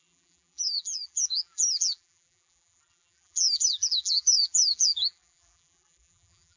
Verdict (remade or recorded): remade